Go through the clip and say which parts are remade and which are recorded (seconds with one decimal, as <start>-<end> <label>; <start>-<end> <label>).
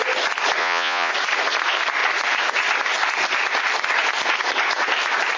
0.0-0.6 recorded; 0.6-1.1 remade; 1.1-5.4 recorded